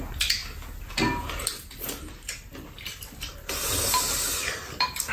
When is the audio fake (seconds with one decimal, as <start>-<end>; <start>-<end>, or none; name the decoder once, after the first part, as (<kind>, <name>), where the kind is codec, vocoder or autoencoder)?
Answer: 0.0-5.1 (vocoder, BigVGAN v2)